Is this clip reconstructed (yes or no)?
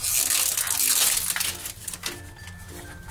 no